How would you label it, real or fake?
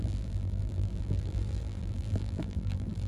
fake